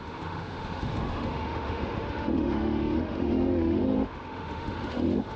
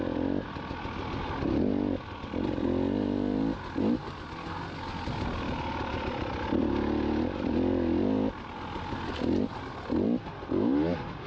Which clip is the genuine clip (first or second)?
second